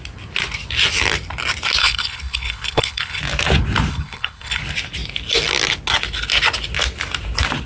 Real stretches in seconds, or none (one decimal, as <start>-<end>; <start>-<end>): 0.0-1.8; 3.2-3.9; 4.6-7.7